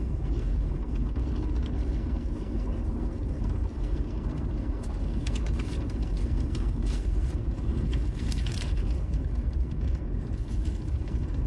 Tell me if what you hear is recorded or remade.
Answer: remade